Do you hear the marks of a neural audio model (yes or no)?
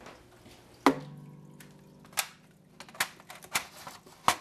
no